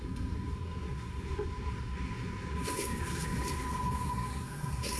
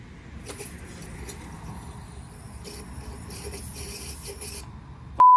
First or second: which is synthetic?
first